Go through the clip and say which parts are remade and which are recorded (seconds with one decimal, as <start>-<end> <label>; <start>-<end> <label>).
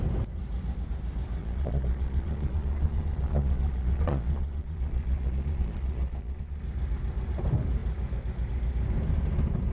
0.0-1.4 recorded; 1.4-6.6 remade; 6.6-9.7 recorded